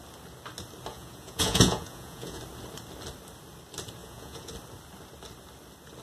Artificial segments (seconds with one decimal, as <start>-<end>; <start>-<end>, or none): 0.9-2.4; 4.0-4.5